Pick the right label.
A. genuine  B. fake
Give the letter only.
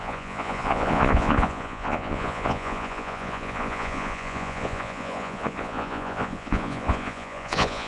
B